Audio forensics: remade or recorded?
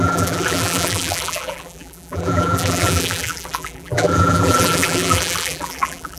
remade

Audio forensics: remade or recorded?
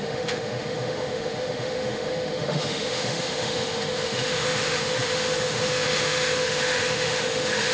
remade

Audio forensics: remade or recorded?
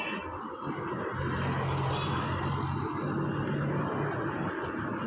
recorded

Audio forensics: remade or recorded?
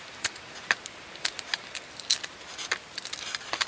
recorded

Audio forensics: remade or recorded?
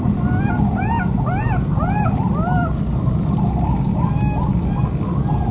recorded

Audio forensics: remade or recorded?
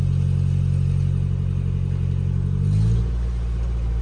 recorded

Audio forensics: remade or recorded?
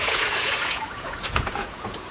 remade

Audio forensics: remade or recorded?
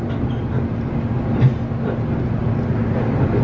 recorded